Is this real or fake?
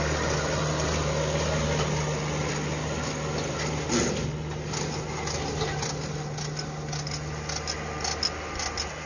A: real